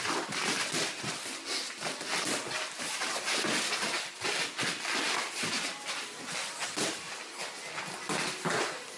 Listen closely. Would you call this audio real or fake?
real